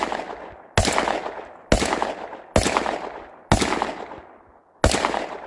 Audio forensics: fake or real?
real